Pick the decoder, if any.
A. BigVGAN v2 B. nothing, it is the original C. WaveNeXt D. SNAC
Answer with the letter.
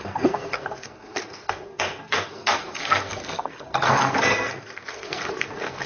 D